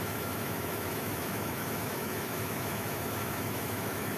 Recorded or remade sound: remade